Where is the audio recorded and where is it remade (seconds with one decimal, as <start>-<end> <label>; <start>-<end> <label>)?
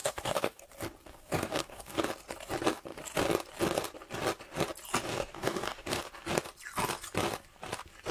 0.0-0.6 remade; 0.6-1.1 recorded; 1.1-2.0 remade; 2.0-5.1 recorded; 5.1-6.0 remade; 6.0-8.1 recorded